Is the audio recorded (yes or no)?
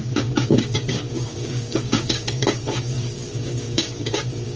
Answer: no